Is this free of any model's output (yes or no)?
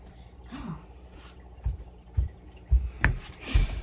no